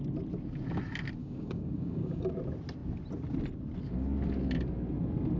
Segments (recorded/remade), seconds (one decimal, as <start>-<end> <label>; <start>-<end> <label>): 0.0-1.2 recorded; 1.2-2.3 remade; 2.3-5.4 recorded